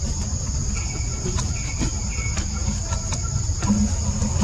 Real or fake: real